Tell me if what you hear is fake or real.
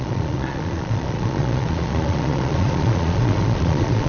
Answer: fake